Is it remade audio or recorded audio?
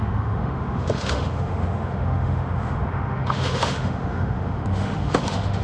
remade